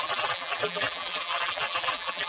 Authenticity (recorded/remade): remade